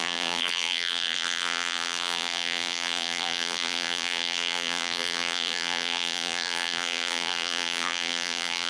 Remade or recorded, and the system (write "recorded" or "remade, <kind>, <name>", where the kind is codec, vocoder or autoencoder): remade, vocoder, BigVGAN v2